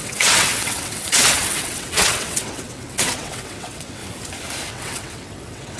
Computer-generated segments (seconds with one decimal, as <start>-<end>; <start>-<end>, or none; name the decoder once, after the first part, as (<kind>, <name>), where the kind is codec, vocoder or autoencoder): 0.0-4.0 (vocoder, WaveNeXt); 4.7-5.8